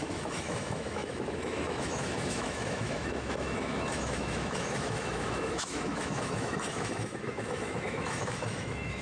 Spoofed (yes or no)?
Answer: yes